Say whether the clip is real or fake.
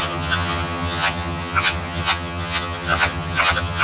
fake